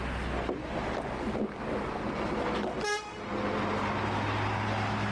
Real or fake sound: real